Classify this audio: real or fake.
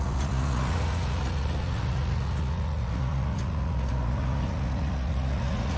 fake